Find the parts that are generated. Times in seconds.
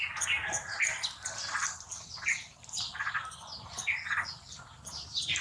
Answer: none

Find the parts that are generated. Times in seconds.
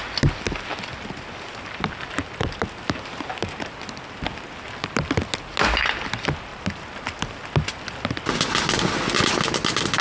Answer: none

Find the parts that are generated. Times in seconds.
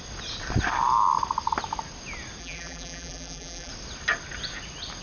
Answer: 2.4-3.7 (vocoder, BigVGAN v2)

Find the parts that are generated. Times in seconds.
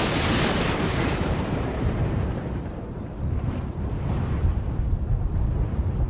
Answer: 0.0-3.7 (vocoder, BigVGAN v2)